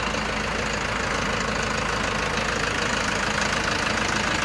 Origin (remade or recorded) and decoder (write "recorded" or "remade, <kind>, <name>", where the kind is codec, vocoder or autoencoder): recorded